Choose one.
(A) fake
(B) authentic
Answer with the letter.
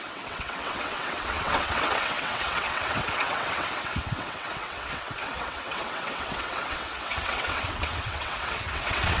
A